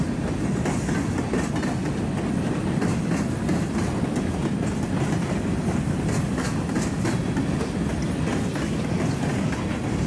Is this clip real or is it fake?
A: real